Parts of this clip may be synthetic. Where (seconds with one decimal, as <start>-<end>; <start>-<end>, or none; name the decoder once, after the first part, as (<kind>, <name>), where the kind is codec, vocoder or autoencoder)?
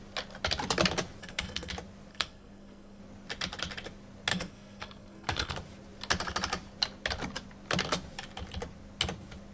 1.2-1.7 (codec, SNAC); 2.1-3.0; 4.3-5.5